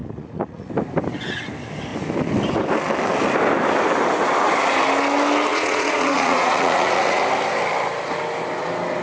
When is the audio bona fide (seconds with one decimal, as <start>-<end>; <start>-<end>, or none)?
0.7-5.5; 7.2-9.0